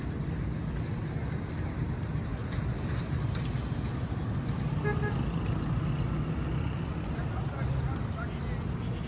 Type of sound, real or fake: real